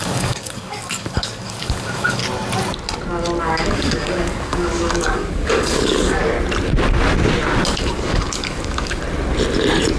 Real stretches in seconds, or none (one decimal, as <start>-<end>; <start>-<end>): 2.2-3.4; 6.2-7.8; 9.0-10.0